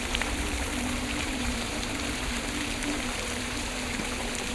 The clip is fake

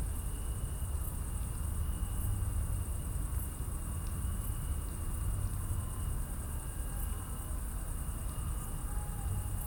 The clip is real